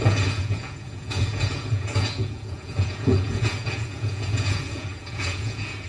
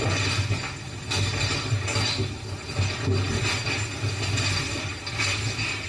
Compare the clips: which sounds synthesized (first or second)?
first